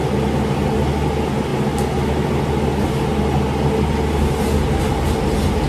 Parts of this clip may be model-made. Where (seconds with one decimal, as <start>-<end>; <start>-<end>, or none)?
none